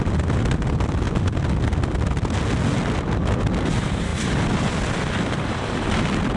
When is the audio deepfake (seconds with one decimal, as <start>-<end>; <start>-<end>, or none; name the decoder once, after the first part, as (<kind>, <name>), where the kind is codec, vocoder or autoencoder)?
4.1-6.4 (vocoder, BigVGAN v2)